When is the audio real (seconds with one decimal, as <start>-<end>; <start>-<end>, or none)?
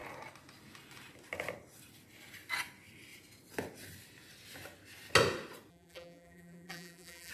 0.0-5.7